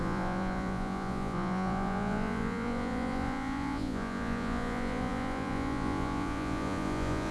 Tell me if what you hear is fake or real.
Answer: fake